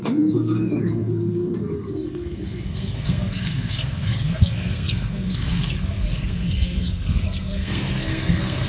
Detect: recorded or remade remade